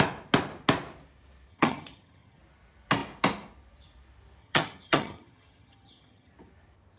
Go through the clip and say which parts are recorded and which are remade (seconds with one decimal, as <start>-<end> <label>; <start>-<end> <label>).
0.0-1.5 recorded; 1.5-2.4 remade; 2.4-4.4 recorded; 4.4-6.3 remade; 6.3-7.0 recorded